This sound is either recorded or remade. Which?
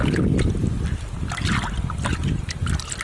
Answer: recorded